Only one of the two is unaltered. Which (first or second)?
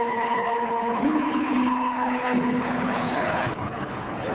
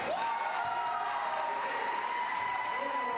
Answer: second